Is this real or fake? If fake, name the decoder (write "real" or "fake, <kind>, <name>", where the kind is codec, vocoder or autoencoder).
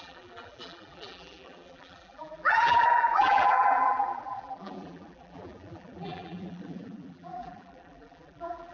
fake, vocoder, BigVGAN v2